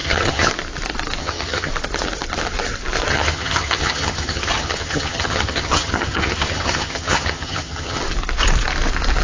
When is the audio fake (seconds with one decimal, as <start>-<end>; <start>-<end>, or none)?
0.0-0.5; 1.2-1.7; 3.1-8.0